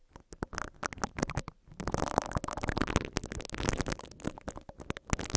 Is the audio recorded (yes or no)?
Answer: yes